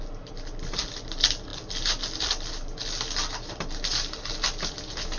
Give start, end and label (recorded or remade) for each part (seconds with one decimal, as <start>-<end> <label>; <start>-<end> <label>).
0.0-5.2 recorded